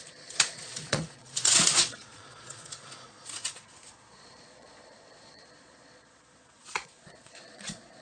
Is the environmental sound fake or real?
fake